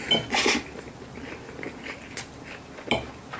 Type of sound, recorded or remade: recorded